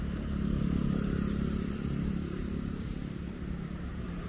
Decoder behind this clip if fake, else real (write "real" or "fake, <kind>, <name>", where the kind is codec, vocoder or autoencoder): fake, vocoder, BigVGAN v2